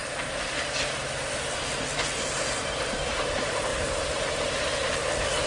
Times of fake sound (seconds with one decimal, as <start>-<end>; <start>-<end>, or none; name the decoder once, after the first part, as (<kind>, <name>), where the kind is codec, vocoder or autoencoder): none